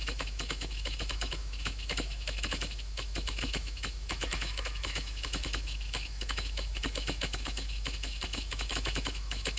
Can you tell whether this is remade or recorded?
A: remade